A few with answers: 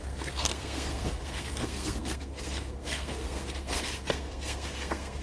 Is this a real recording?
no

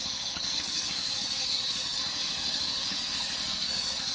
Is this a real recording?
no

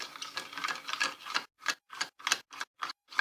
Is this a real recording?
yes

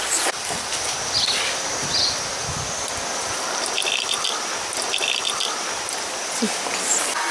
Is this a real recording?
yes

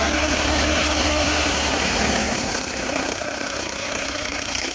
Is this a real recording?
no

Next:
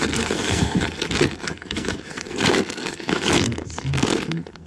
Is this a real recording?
no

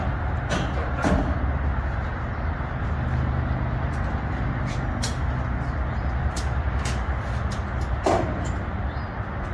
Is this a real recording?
yes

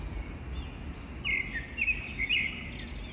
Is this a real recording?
yes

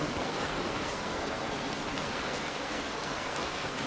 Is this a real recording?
no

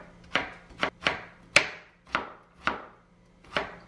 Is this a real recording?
yes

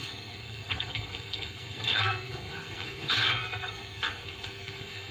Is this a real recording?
no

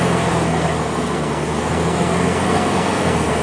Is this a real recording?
no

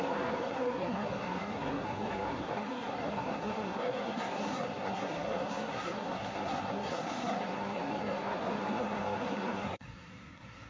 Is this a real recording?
no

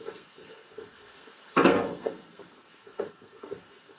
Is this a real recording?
no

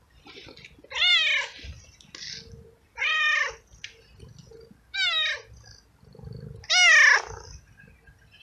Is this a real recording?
yes